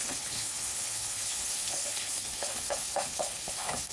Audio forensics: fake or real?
fake